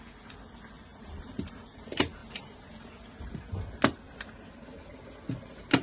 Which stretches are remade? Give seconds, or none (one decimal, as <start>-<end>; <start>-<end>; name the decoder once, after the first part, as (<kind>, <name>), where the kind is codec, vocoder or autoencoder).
0.9-1.4 (vocoder, BigVGAN v2); 2.2-3.5